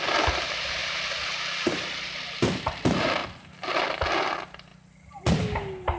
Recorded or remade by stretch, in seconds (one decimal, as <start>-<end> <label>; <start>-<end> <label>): 0.0-6.0 recorded